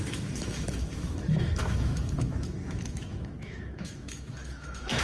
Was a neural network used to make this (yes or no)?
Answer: yes